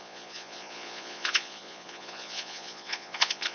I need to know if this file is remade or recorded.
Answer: remade